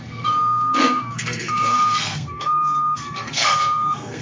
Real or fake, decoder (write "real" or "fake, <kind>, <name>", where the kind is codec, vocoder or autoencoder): fake, codec, SNAC